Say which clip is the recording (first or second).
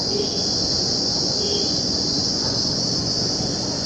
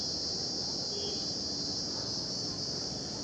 second